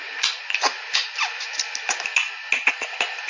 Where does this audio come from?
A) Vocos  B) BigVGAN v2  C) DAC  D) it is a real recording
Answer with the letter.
D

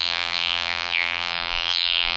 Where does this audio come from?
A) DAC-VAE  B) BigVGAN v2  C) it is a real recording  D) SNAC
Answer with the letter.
B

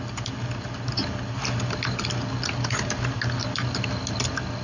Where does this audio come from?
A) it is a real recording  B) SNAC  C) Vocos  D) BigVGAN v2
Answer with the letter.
A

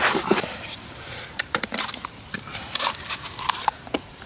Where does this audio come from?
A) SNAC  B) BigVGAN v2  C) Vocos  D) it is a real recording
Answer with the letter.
B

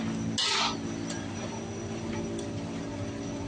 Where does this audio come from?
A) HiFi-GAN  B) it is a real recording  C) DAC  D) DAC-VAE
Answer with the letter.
B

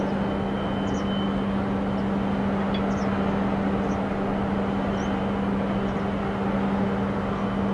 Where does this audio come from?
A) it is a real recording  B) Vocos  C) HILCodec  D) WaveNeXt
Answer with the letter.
A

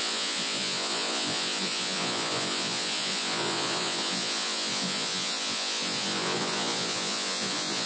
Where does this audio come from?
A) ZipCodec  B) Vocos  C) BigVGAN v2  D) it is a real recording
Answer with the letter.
B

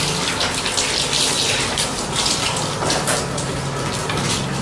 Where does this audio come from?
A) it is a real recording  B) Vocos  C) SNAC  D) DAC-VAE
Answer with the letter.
A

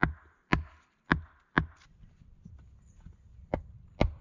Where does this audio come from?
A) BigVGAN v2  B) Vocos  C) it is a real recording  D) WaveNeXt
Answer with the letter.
C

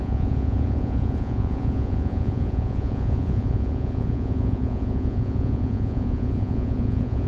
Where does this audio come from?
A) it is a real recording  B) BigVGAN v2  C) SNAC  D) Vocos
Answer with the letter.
D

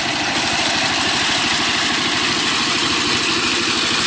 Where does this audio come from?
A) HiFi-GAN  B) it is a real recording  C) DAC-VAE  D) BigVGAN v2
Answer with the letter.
B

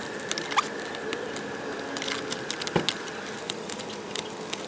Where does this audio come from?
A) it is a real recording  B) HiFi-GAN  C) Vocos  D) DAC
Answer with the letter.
A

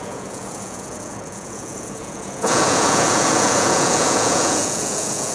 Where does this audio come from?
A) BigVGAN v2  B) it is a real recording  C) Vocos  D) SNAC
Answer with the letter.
C